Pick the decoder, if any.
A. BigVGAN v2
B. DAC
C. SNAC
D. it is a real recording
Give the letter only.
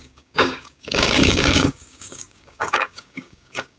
B